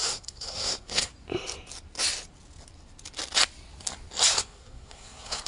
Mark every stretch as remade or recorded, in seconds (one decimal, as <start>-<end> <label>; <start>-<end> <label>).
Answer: 0.0-1.1 remade; 1.1-4.3 recorded; 4.3-5.5 remade